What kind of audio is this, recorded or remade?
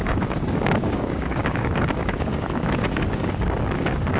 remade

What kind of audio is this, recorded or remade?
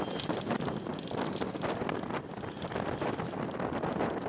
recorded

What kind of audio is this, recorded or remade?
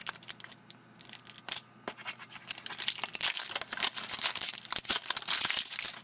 recorded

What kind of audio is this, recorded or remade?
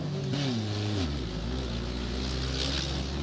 recorded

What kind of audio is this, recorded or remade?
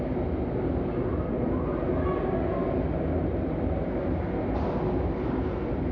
recorded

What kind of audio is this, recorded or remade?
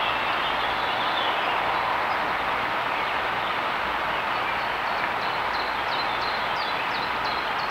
recorded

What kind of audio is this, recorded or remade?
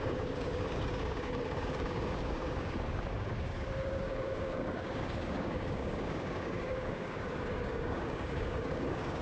remade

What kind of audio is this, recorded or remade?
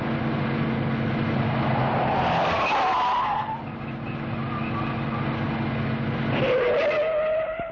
recorded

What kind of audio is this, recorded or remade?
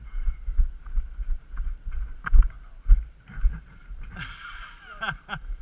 recorded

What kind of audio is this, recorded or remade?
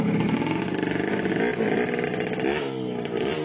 recorded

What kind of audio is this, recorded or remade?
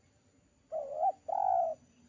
recorded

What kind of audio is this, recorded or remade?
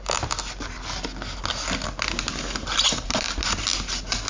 recorded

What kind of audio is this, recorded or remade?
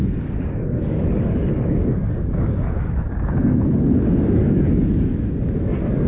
remade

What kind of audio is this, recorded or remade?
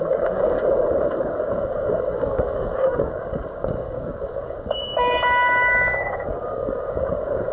remade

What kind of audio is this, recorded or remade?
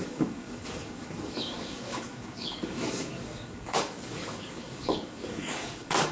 remade